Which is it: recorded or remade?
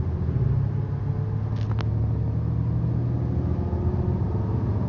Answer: recorded